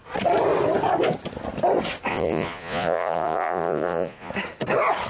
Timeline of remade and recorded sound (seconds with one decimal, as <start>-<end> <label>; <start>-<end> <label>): 0.0-2.1 recorded; 2.1-4.3 remade; 4.3-5.1 recorded